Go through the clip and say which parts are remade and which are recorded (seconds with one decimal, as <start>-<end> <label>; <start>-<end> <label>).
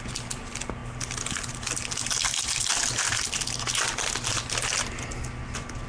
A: 0.0-5.9 recorded